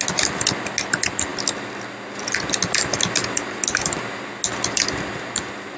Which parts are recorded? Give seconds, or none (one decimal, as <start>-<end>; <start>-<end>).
0.0-5.8